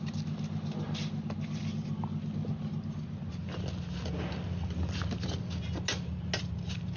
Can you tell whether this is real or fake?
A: real